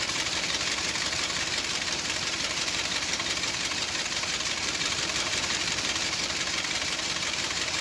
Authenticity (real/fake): fake